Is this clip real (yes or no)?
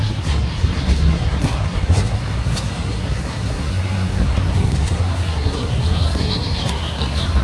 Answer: no